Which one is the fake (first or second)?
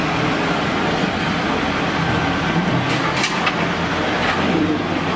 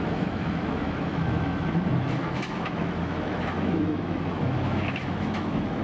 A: second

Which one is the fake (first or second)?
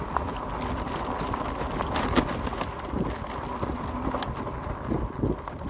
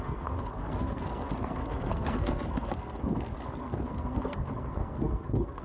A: second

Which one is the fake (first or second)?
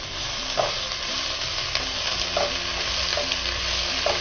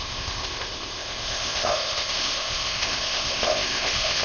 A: second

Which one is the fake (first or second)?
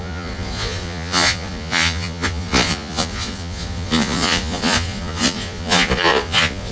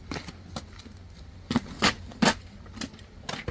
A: first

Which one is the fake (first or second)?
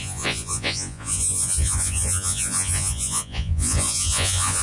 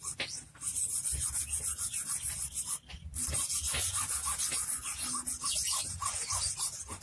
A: first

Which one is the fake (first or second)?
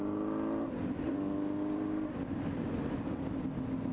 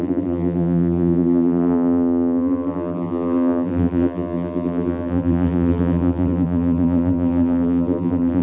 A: second